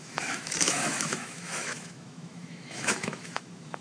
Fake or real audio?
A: fake